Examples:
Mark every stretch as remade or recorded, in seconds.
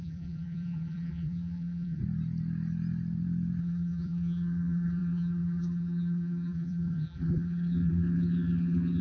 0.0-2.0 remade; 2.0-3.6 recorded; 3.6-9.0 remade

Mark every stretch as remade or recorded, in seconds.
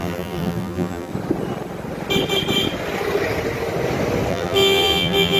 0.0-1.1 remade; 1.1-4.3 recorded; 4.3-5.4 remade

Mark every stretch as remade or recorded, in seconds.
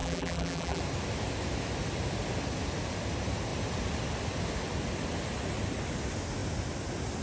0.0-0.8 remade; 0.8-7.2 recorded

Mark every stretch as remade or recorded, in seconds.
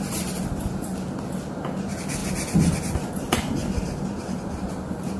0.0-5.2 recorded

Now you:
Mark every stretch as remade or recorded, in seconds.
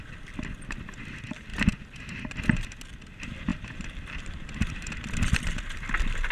0.0-1.5 recorded; 1.5-2.2 remade; 2.2-3.5 recorded; 3.5-4.9 remade; 4.9-6.3 recorded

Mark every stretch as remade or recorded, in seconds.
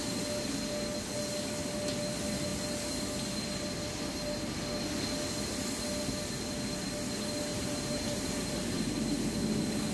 0.0-7.5 recorded; 7.5-8.8 remade; 8.8-9.9 recorded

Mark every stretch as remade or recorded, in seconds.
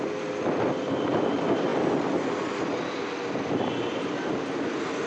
0.0-5.1 recorded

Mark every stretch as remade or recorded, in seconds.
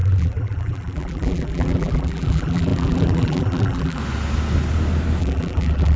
0.0-4.0 remade; 4.0-5.2 recorded; 5.2-6.0 remade